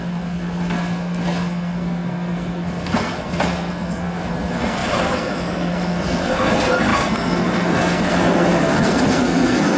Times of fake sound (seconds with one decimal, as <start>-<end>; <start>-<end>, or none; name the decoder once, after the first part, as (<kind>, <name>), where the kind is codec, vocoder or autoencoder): 0.0-9.8 (codec, SNAC)